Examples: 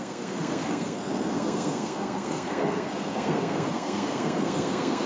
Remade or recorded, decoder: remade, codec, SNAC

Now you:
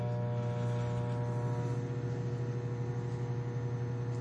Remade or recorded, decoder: recorded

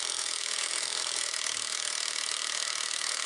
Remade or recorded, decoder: remade, autoencoder, DAC-VAE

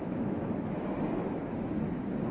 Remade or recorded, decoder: remade, autoencoder, DAC-VAE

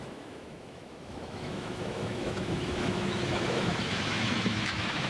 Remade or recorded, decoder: remade, autoencoder, DAC-VAE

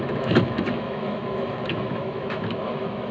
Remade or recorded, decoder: remade, autoencoder, DAC-VAE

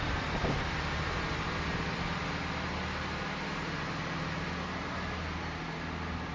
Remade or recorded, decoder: recorded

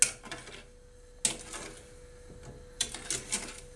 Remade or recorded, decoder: recorded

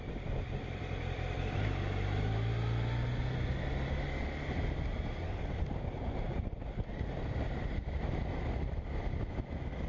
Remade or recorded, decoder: recorded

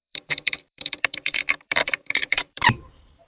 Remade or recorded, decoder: remade, vocoder, BigVGAN v2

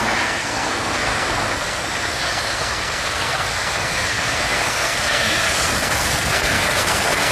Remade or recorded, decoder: remade, codec, SNAC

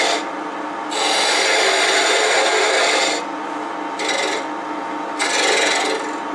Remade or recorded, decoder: recorded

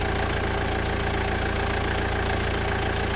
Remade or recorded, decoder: recorded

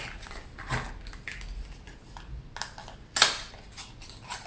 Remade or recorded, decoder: recorded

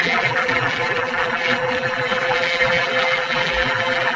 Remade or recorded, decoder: remade, vocoder, BigVGAN v2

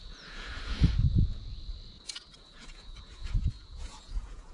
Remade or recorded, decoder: remade, vocoder, Vocos